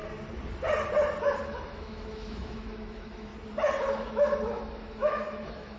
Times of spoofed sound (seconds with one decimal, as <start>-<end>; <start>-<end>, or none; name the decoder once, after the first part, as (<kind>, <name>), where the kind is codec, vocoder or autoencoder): 1.4-3.3 (autoencoder, DAC-VAE); 3.8-5.8